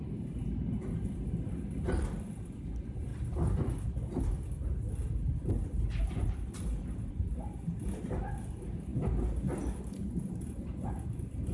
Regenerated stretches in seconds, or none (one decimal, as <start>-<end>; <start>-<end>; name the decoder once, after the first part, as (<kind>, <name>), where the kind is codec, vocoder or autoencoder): none